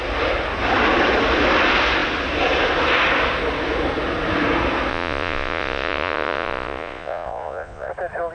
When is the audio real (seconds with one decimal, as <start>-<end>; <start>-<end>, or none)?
0.0-4.9; 7.9-8.3